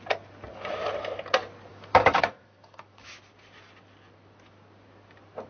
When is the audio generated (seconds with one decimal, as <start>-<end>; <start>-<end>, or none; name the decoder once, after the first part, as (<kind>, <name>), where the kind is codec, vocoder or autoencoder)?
1.7-3.1 (autoencoder, DAC-VAE)